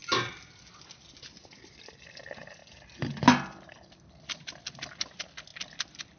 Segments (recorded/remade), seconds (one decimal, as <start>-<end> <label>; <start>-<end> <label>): 0.0-6.2 recorded